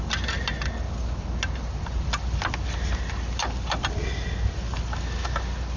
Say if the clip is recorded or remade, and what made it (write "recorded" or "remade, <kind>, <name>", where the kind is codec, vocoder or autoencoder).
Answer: recorded